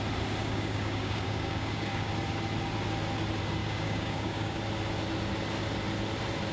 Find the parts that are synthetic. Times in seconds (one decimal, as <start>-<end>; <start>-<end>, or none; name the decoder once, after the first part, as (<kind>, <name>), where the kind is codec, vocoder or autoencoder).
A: 0.4-2.1 (codec, DAC); 3.6-4.6